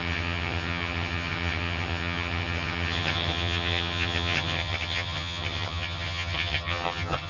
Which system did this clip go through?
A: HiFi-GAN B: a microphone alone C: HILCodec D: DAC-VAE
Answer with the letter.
A